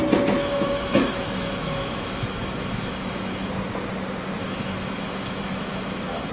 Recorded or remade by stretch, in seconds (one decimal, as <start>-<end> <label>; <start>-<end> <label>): 0.0-0.4 recorded; 0.4-3.5 remade; 3.5-4.4 recorded; 4.4-6.3 remade